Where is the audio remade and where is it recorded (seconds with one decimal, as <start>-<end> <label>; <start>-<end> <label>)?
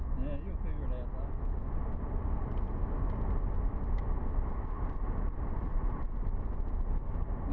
0.0-7.5 recorded